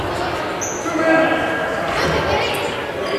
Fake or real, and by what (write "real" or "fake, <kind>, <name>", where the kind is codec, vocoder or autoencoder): real